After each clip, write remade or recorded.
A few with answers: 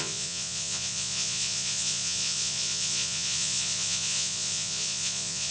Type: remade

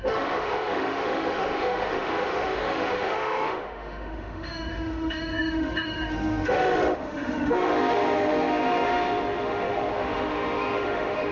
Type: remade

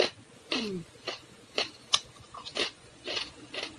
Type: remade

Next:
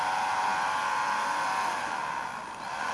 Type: recorded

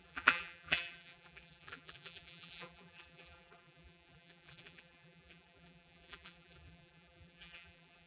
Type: remade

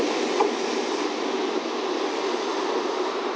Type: recorded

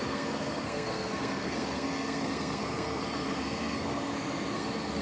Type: remade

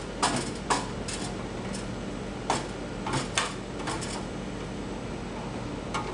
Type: recorded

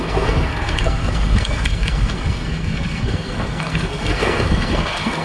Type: remade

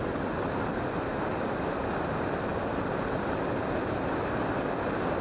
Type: recorded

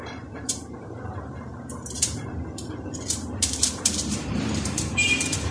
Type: remade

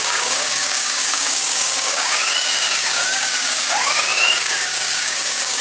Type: remade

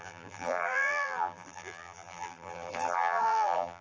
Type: remade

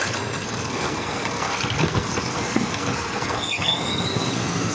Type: remade